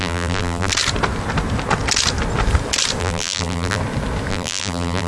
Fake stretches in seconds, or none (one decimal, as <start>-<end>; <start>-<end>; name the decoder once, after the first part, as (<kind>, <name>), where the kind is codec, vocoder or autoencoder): 0.0-0.7 (vocoder, BigVGAN v2); 3.0-3.8; 4.3-5.1